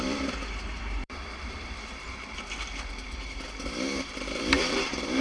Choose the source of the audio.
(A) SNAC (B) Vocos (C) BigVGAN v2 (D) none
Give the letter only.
C